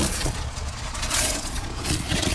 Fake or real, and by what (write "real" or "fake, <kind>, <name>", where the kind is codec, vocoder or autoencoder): fake, vocoder, Vocos